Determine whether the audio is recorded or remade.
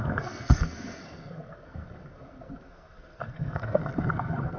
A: remade